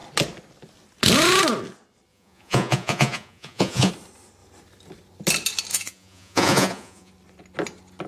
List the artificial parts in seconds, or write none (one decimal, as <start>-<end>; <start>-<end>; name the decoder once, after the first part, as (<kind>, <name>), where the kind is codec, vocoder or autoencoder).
2.1-3.9 (vocoder, Vocos); 5.7-7.1